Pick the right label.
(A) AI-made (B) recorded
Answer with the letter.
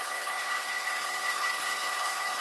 A